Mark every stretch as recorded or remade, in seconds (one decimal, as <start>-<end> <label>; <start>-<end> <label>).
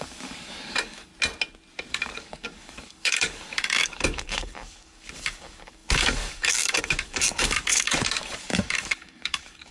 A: 0.0-1.1 remade; 1.1-1.9 recorded; 1.9-9.7 remade